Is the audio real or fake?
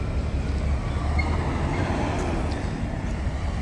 real